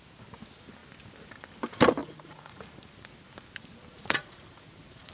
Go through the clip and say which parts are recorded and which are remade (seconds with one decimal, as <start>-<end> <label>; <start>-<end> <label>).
0.0-2.0 recorded; 2.0-2.6 remade; 2.6-3.9 recorded; 3.9-5.1 remade